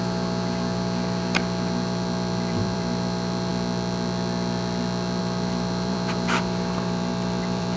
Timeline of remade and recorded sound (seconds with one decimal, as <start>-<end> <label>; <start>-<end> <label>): 0.0-3.5 remade; 3.5-5.2 recorded; 5.2-7.8 remade